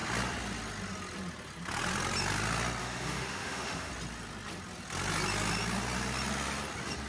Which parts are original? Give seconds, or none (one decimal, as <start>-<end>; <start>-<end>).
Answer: 0.0-2.8; 3.9-7.1